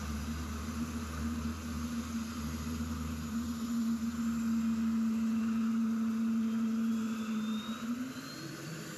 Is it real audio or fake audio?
real